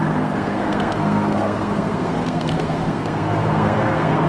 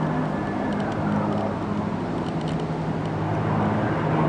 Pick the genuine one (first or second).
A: second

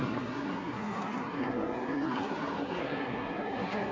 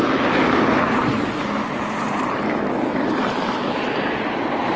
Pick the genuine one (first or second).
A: second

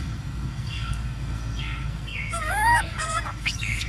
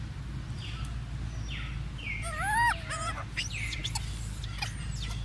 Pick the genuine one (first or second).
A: second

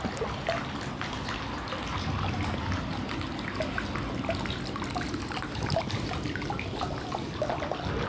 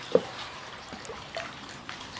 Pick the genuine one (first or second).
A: first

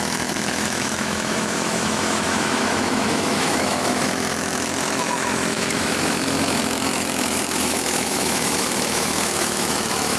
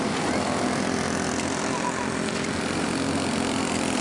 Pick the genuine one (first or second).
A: second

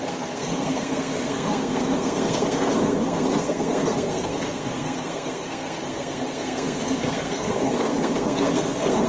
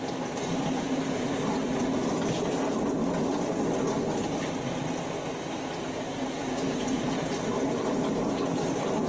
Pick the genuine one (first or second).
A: second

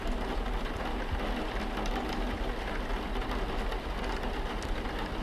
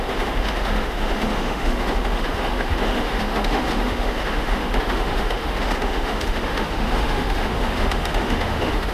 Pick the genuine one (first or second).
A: first